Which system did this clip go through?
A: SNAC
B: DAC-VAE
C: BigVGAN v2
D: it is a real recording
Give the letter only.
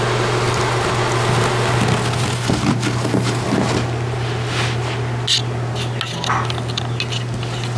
D